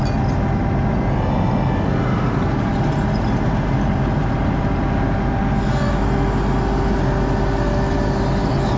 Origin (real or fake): real